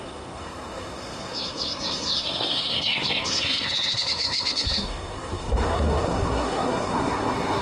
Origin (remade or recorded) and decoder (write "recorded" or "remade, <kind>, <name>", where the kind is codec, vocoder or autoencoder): remade, codec, SNAC